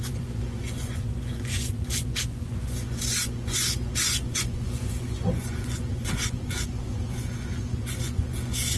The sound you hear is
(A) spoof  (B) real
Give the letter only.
A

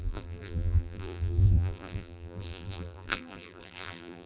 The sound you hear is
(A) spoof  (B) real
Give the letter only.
A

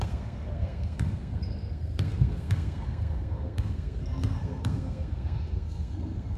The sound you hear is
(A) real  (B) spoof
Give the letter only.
B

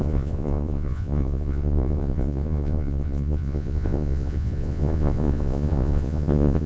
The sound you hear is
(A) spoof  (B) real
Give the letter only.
A